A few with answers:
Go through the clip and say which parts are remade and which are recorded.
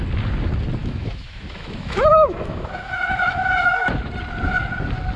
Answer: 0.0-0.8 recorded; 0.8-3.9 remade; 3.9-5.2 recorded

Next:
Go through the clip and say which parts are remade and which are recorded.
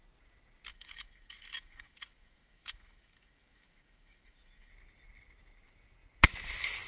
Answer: 0.0-0.7 recorded; 0.7-4.7 remade; 4.7-6.9 recorded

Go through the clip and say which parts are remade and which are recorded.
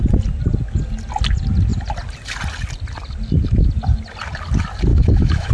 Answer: 0.0-4.9 recorded; 4.9-5.5 remade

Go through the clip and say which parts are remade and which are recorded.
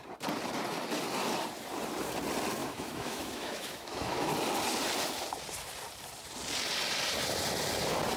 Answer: 0.0-2.6 recorded; 2.6-4.3 remade; 4.3-8.2 recorded